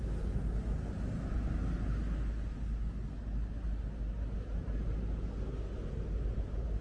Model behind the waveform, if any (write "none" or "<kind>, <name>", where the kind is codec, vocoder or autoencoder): none